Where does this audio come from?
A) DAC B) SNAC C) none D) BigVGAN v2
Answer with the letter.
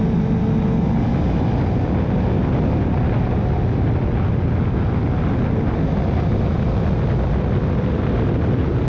C